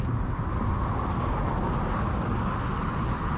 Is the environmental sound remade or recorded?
recorded